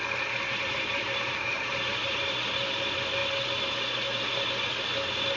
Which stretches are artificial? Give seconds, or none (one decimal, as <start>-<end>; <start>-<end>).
0.7-2.5